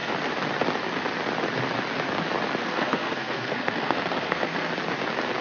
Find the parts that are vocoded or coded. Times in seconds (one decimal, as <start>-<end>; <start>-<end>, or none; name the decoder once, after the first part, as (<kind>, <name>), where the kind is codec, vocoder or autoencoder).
2.6-4.7 (codec, SNAC)